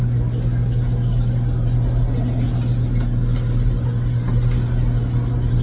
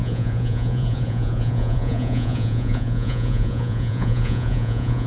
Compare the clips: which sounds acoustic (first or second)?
first